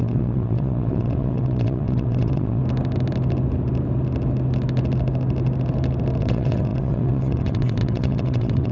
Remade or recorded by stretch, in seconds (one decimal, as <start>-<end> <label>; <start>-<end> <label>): 0.0-2.6 remade; 2.6-6.2 recorded; 6.2-8.7 remade